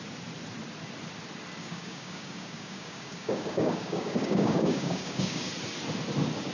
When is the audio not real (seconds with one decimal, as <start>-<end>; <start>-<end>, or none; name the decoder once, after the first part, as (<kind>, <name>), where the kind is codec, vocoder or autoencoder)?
1.6-5.5 (codec, DAC)